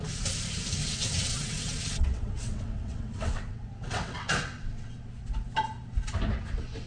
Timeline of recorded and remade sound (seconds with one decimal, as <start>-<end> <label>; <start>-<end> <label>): 0.0-0.8 recorded; 0.8-4.9 remade; 4.9-6.9 recorded